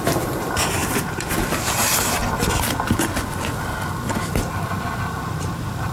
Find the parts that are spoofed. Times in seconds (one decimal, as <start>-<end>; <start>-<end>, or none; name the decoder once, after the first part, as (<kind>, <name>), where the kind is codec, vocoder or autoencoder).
0.0-2.2 (vocoder, BigVGAN v2); 4.5-5.9